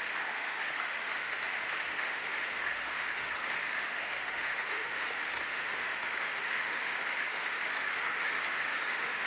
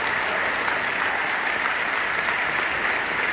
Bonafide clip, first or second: second